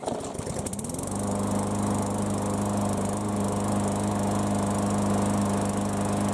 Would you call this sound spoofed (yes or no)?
no